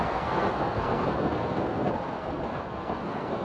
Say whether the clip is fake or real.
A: fake